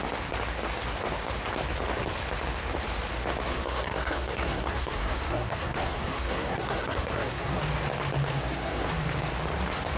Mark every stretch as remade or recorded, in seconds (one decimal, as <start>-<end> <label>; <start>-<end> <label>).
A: 0.0-3.5 recorded; 3.5-7.6 remade; 7.6-8.3 recorded; 8.3-8.9 remade; 8.9-10.0 recorded